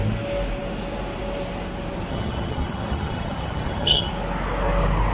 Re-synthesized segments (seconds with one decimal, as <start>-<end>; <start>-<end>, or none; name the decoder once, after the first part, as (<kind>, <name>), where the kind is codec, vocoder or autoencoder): 2.1-4.1 (vocoder, HiFi-GAN)